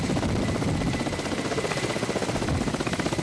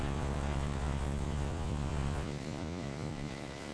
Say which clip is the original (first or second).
first